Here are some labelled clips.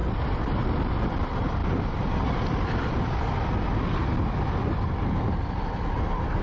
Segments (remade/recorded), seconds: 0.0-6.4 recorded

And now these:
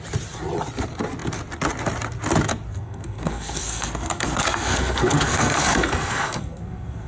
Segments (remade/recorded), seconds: 0.0-2.7 recorded; 2.7-7.1 remade